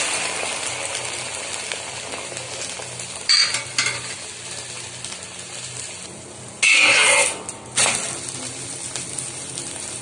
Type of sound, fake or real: real